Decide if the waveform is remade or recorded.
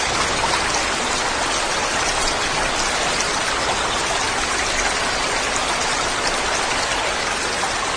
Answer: recorded